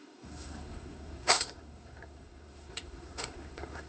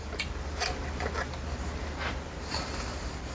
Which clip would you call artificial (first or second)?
first